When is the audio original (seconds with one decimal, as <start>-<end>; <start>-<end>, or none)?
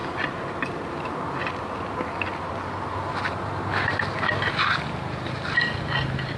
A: 0.0-6.4